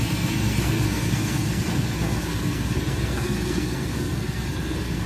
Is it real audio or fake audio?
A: fake